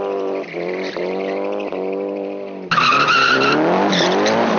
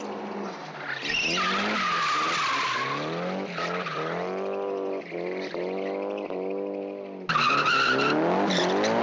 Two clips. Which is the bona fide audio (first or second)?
second